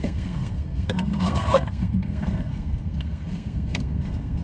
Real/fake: fake